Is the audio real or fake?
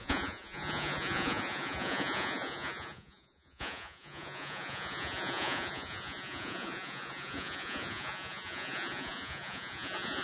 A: fake